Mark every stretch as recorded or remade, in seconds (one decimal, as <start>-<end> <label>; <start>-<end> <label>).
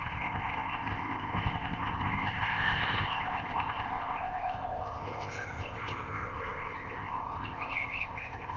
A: 0.0-8.6 remade